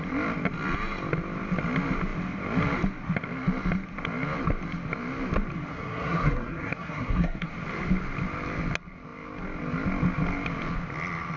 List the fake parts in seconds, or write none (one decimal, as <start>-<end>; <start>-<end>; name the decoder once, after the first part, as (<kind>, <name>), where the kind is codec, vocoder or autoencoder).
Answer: 5.7-7.5 (codec, SNAC)